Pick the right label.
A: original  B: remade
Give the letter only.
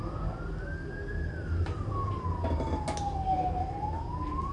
A